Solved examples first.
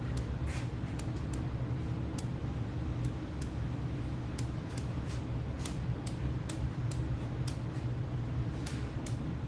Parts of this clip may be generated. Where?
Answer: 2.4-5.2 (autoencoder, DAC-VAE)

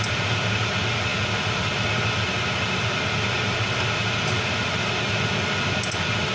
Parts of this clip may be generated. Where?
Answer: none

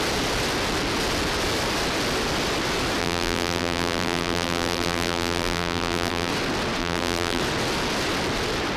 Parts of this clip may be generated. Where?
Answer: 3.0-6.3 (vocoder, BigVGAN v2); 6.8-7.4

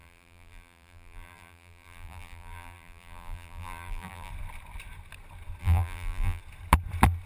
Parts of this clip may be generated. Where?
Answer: 0.0-4.3 (vocoder, BigVGAN v2); 5.6-6.4